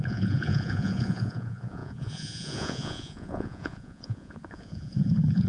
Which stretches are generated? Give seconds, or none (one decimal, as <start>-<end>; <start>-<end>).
0.0-5.5

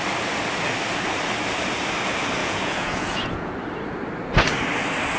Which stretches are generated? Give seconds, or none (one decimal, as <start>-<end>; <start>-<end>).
2.4-3.5

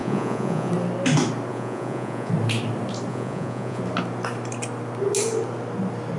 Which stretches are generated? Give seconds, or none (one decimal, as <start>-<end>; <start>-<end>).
0.0-0.7; 1.5-2.3; 3.1-3.8

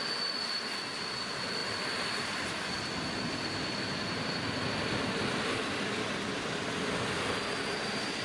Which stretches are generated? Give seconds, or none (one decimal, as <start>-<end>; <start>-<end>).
none

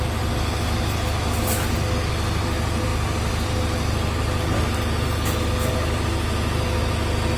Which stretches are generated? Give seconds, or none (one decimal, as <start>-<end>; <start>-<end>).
none

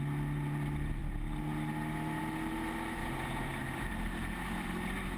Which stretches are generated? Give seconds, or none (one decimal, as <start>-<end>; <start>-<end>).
3.0-3.5

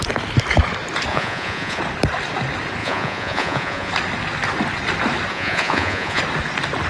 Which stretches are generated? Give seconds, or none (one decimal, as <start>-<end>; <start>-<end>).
1.1-1.8; 2.8-3.9; 5.3-6.2

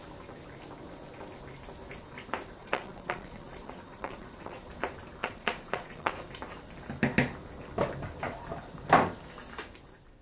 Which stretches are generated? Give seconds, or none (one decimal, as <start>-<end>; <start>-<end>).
2.6-4.7; 5.2-6.1